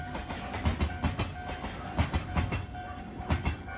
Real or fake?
real